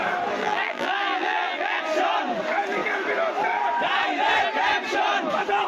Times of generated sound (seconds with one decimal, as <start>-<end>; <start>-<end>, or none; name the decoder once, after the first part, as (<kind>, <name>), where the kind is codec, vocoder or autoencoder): 0.4-1.8 (vocoder, BigVGAN v2)